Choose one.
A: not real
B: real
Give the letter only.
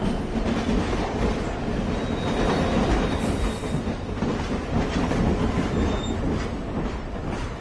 B